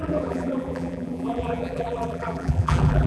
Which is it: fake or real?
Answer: fake